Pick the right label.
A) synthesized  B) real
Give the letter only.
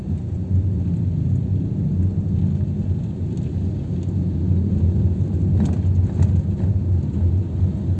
B